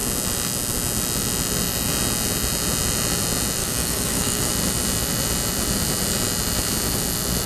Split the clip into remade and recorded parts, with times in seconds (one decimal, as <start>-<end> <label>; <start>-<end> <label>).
0.0-3.6 recorded; 3.6-4.5 remade; 4.5-7.5 recorded